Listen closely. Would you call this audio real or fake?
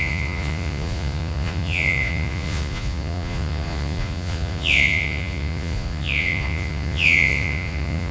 fake